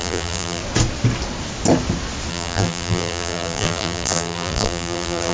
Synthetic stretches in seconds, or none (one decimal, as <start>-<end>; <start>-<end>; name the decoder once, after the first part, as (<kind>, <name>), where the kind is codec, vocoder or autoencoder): 0.0-0.6 (vocoder, BigVGAN v2); 2.3-5.3

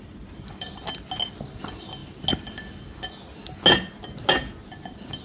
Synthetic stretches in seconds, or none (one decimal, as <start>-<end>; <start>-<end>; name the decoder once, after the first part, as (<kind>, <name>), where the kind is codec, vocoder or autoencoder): none